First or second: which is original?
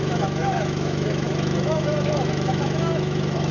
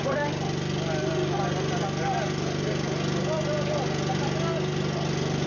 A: second